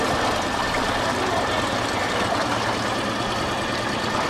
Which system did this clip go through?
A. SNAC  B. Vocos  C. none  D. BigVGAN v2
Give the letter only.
C